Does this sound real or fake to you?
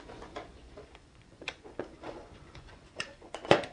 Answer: fake